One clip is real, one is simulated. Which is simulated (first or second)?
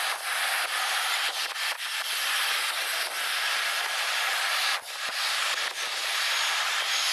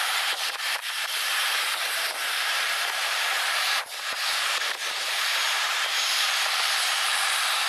second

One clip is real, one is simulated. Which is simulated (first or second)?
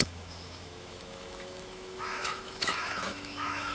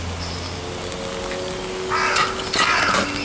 first